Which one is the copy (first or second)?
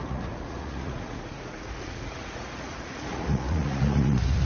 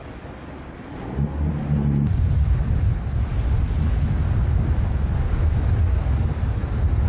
first